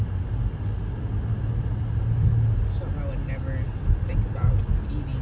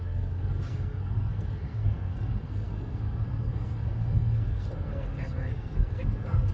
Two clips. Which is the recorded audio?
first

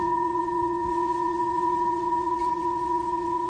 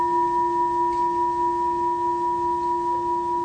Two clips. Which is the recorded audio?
second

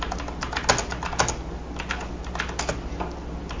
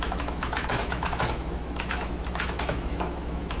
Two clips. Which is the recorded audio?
first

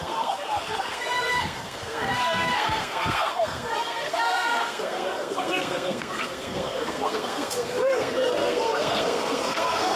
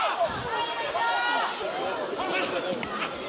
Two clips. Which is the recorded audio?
second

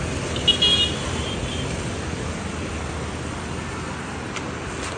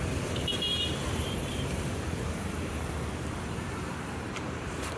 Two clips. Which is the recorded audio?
first